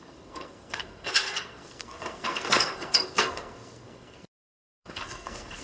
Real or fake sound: fake